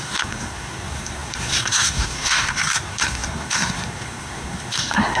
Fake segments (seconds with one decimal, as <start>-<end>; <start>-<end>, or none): 0.0-5.2